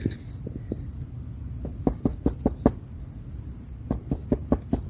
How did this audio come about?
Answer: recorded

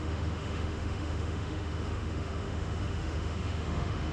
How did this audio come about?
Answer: remade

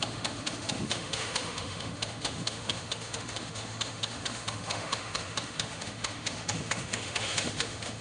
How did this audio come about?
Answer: remade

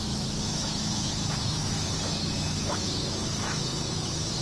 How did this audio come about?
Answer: remade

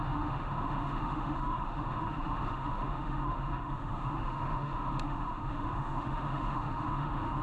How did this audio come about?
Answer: remade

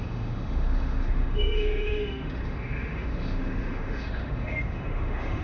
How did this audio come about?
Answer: remade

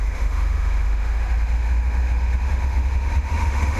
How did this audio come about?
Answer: remade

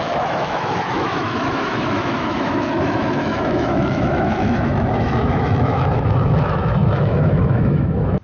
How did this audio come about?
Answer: remade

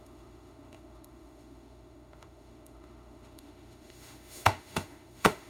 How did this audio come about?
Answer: remade